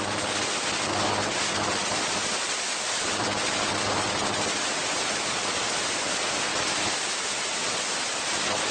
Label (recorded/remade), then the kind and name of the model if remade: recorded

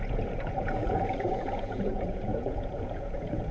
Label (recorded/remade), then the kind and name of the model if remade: remade, vocoder, Vocos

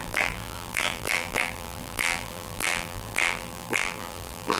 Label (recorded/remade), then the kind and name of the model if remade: remade, vocoder, BigVGAN v2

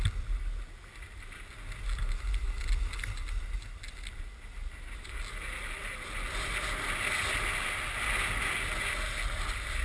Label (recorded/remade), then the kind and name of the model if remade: recorded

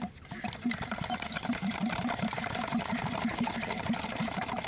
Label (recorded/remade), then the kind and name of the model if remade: remade, vocoder, BigVGAN v2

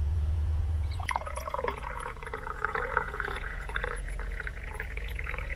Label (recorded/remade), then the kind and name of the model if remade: remade, vocoder, Vocos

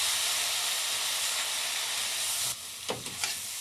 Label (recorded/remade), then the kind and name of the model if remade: recorded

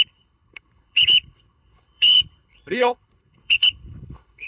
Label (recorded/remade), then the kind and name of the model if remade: remade, codec, HILCodec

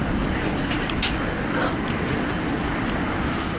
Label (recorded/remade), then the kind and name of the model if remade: recorded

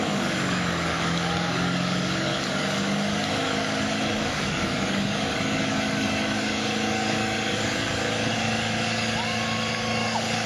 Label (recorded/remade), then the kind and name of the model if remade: remade, codec, DAC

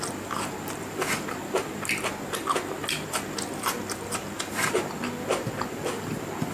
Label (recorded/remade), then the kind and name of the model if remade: recorded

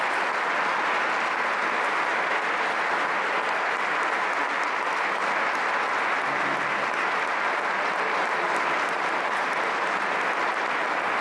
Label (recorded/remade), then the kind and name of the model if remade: recorded